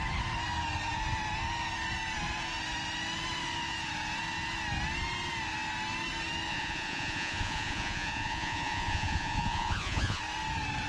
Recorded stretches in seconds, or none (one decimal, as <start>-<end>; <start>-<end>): 0.0-6.5; 10.2-10.9